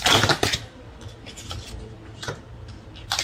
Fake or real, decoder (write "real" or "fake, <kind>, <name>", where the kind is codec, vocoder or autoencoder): real